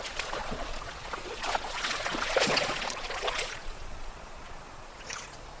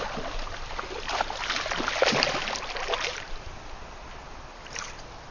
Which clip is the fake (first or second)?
first